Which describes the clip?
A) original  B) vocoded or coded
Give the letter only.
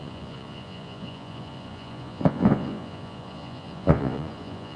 B